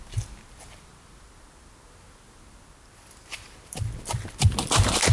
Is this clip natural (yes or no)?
yes